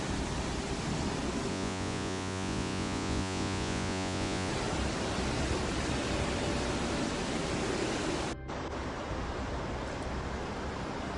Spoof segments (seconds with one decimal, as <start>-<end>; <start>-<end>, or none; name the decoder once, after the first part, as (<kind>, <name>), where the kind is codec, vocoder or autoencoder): 1.5-4.5 (vocoder, Vocos)

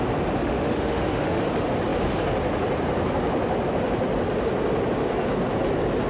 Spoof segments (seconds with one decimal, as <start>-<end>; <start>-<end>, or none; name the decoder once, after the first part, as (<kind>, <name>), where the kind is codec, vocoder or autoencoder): 0.4-1.4 (autoencoder, DAC-VAE)

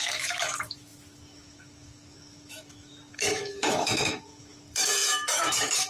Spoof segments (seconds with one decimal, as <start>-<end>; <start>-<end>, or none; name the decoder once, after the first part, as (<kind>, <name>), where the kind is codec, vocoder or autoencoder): 0.0-5.9 (autoencoder, DAC-VAE)